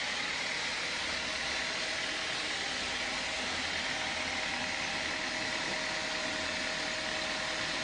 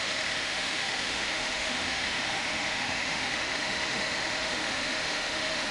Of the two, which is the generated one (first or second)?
second